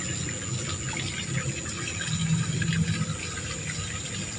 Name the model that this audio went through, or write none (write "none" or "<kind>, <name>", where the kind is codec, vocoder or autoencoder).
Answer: none